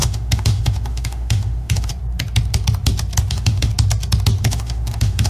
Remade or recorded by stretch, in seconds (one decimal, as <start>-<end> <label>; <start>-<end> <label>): 0.0-1.9 remade; 1.9-3.3 recorded; 3.3-3.7 remade; 3.7-4.4 recorded; 4.4-5.3 remade